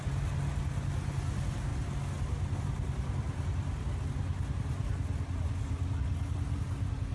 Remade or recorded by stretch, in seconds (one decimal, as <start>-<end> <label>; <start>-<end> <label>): 0.0-7.1 recorded